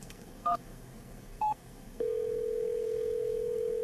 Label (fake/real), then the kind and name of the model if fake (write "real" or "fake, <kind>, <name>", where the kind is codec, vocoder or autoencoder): fake, codec, SNAC